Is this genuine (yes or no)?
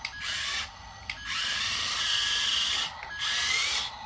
yes